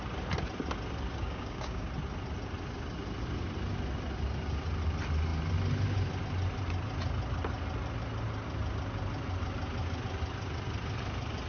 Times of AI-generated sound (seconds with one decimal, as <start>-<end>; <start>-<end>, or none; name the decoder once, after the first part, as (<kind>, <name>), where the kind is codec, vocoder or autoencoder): 1.2-1.9 (codec, DAC)